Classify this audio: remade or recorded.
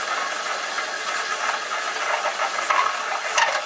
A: recorded